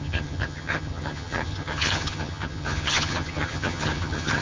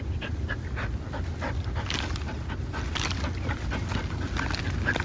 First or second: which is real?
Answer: second